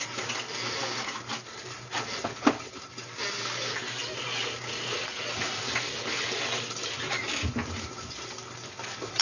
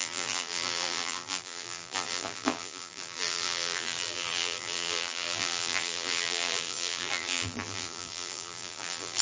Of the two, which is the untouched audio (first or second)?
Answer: first